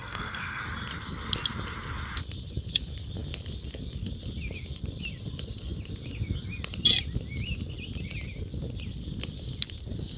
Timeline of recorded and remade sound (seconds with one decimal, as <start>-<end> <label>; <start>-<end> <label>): 0.0-0.6 remade; 0.6-10.2 recorded